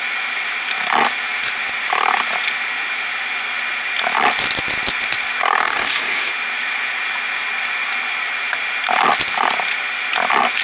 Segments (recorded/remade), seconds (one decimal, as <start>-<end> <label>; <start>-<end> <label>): 0.0-5.6 recorded; 5.6-6.3 remade; 6.3-10.6 recorded